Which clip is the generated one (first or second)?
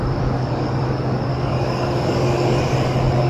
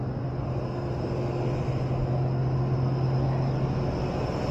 first